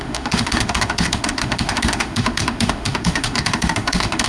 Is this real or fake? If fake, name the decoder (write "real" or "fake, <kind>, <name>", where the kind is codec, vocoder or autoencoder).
fake, autoencoder, DAC-VAE